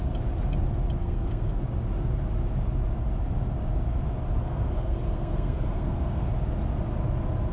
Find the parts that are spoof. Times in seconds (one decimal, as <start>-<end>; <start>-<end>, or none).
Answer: 1.0-1.6; 4.4-6.3